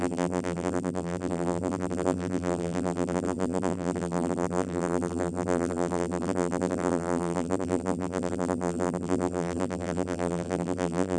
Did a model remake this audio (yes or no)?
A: yes